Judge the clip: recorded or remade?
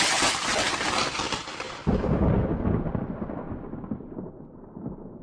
recorded